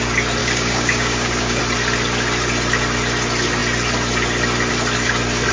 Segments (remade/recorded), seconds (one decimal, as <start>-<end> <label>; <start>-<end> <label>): 0.0-0.4 recorded; 0.4-1.6 remade; 1.6-5.5 recorded